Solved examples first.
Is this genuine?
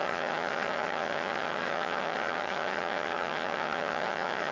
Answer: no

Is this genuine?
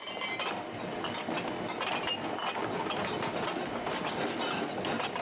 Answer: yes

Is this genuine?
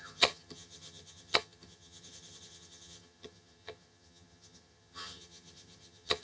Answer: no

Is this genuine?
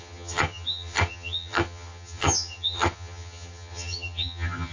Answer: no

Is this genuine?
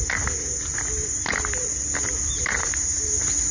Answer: yes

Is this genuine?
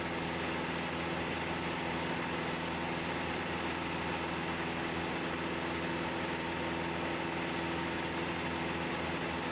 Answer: yes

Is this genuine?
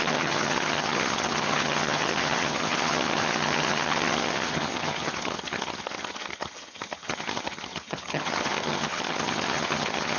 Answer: no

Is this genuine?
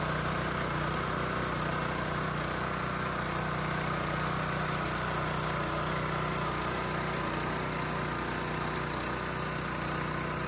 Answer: yes